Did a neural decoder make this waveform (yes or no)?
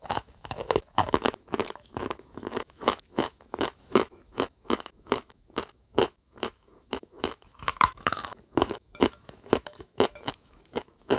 yes